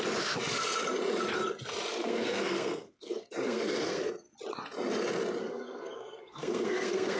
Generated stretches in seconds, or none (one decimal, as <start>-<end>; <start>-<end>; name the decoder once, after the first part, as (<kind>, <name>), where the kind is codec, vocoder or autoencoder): 1.9-4.1 (codec, SNAC); 5.4-7.2